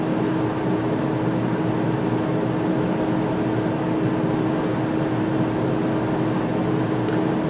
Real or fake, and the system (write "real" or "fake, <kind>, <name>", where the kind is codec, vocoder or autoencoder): real